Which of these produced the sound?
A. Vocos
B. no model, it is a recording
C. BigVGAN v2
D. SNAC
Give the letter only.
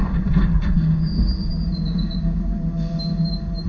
C